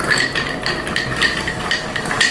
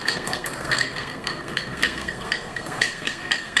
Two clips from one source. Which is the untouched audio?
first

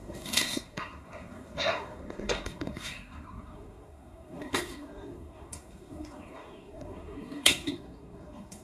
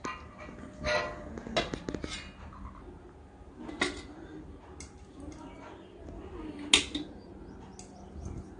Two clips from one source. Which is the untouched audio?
second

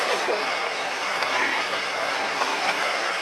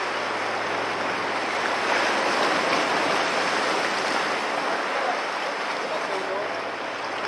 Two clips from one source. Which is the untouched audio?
second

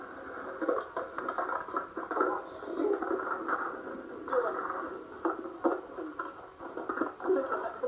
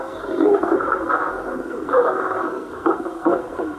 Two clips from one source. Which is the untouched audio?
first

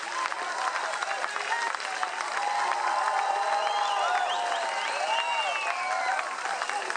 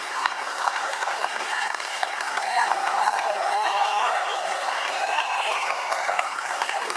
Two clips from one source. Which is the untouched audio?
first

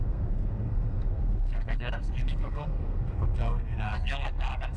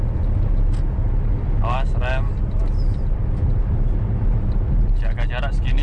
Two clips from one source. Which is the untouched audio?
second